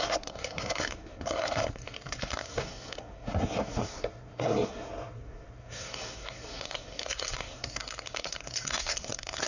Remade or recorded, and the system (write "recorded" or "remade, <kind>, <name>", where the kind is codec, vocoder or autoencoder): remade, codec, SNAC